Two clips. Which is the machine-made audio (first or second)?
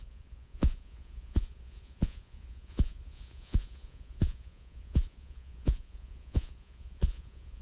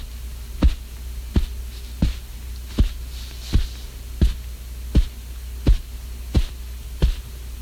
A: first